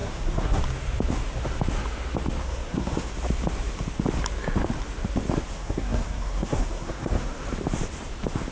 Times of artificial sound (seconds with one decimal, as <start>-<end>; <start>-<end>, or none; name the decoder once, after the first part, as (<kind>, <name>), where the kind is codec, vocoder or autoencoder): 0.0-0.6 (codec, SNAC); 2.4-3.1; 5.5-7.4